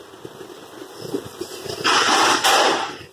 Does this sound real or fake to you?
real